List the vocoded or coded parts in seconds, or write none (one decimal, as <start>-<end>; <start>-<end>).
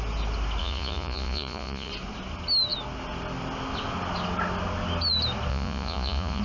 0.6-1.9; 5.5-6.4